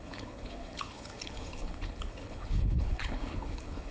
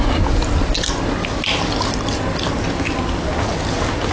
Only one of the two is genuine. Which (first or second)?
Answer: second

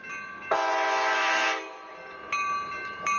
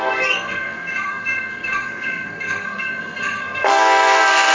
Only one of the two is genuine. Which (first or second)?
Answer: first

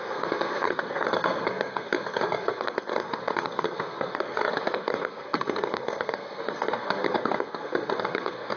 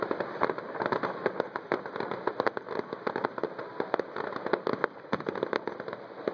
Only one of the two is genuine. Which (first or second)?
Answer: second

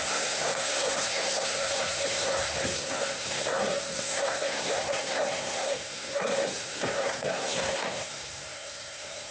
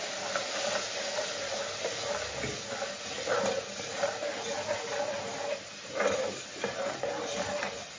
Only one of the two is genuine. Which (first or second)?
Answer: second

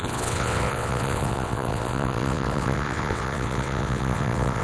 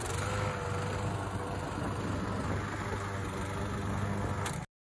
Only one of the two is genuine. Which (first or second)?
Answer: second